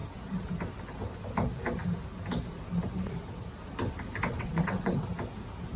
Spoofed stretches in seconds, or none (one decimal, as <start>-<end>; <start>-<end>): 4.3-5.1